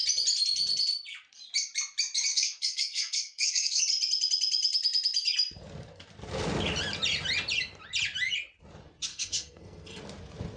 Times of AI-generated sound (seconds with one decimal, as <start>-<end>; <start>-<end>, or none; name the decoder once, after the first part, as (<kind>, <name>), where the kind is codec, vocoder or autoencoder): 2.3-3.8 (codec, SNAC); 9.1-10.0